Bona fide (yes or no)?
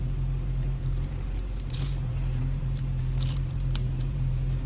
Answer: no